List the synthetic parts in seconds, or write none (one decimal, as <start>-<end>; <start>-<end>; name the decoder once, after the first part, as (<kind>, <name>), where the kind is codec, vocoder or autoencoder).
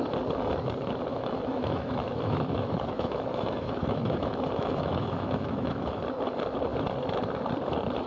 1.1-6.0 (autoencoder, DAC-VAE)